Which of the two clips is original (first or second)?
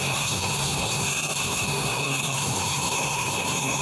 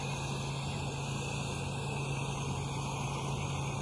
second